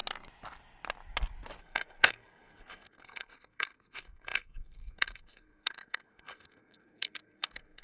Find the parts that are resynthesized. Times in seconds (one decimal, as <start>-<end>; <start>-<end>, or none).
1.6-7.8